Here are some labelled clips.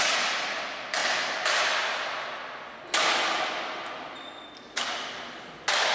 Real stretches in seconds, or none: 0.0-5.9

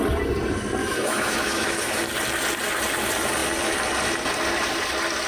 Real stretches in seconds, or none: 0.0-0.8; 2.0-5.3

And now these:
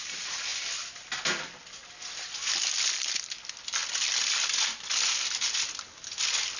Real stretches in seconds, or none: 0.0-6.6

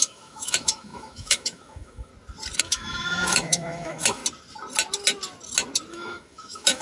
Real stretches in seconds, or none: 2.1-2.6; 4.2-5.9

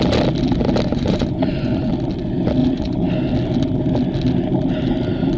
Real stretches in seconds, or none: 0.0-0.9; 1.9-2.6; 3.1-5.4

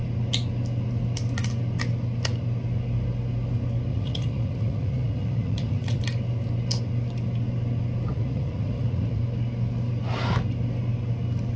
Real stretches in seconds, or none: 0.0-3.9; 6.0-8.1; 9.2-11.6